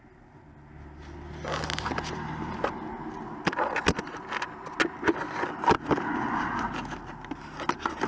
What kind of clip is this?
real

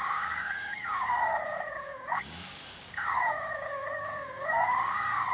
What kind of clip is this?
fake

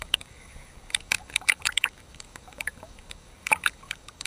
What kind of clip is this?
fake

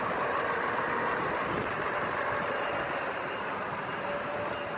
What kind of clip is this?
real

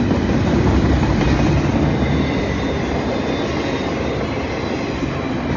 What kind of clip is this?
real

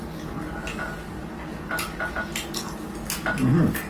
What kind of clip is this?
real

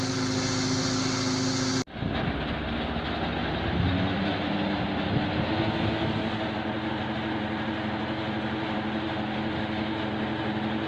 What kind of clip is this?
real